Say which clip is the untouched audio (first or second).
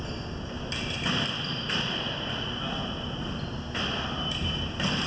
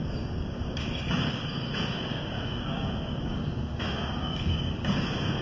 first